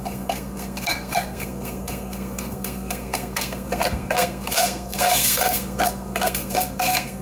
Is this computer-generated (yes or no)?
yes